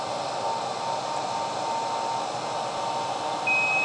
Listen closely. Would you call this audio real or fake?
real